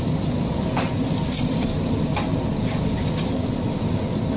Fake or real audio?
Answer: real